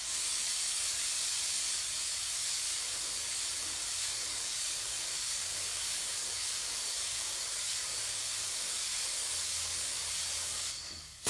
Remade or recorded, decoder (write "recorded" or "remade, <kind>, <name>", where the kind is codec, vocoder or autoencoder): remade, codec, DAC